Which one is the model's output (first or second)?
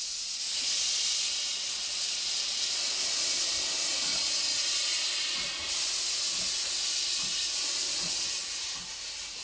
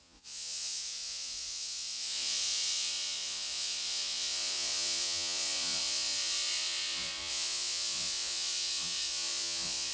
second